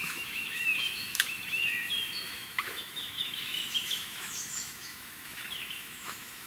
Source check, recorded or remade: remade